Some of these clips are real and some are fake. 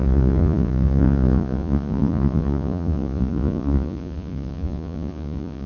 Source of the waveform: fake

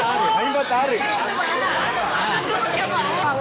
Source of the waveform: fake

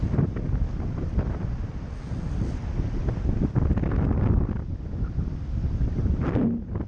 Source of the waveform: real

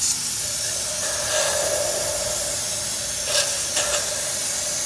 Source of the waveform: real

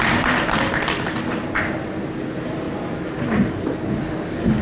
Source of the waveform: real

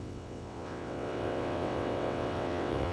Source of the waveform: fake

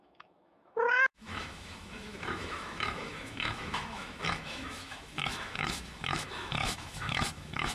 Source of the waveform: fake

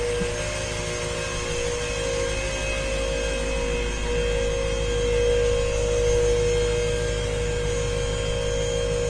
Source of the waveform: real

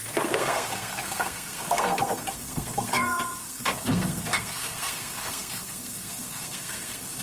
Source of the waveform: fake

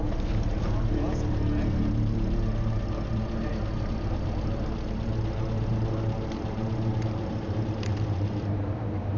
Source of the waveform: fake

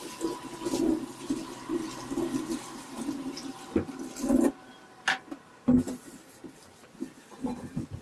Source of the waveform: real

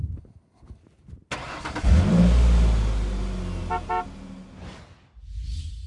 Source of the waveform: real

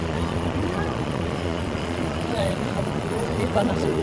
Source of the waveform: fake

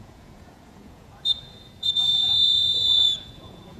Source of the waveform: fake